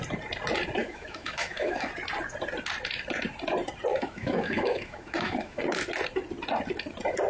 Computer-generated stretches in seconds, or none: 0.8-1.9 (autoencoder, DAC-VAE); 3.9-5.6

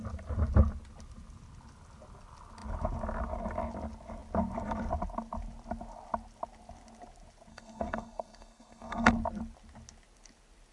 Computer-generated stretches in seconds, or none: 7.5-9.1 (codec, SNAC)

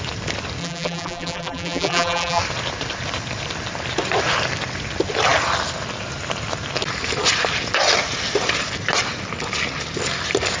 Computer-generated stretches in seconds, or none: 0.6-2.4 (vocoder, BigVGAN v2)